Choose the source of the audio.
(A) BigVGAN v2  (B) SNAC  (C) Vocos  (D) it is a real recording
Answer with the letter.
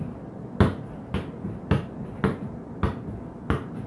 D